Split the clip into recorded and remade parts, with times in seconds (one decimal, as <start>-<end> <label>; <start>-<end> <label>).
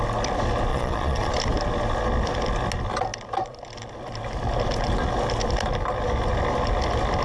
0.0-0.7 recorded; 0.7-1.3 remade; 1.3-7.2 recorded